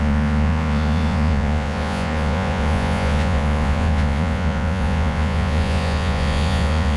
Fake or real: fake